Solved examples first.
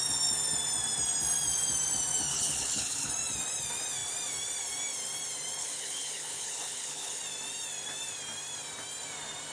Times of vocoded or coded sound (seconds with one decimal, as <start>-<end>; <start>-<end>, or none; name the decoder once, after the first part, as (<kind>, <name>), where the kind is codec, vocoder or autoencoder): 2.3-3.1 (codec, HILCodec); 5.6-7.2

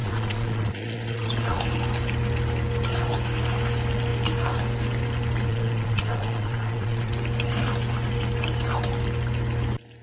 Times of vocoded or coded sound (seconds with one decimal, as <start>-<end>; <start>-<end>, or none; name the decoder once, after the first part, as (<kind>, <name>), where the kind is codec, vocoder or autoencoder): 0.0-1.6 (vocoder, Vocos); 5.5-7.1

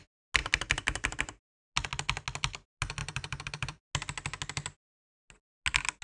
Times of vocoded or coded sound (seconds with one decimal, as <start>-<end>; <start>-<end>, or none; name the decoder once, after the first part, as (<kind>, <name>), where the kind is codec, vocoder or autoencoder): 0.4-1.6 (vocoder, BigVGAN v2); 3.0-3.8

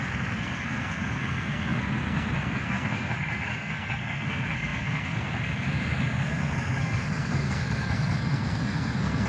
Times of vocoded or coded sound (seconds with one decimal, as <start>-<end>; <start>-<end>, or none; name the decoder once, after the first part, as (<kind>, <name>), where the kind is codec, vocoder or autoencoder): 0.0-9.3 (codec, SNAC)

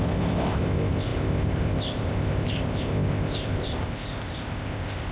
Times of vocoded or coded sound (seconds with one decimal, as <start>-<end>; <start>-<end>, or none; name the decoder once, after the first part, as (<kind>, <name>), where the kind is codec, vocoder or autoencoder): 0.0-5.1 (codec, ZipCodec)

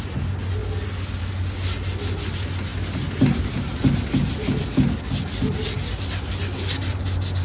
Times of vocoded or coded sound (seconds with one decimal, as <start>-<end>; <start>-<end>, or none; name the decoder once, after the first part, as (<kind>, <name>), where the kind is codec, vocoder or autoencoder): none

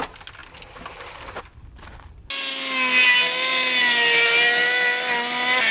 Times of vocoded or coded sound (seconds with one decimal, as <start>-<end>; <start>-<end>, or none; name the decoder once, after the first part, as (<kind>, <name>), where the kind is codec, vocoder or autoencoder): none